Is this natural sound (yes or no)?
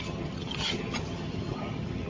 no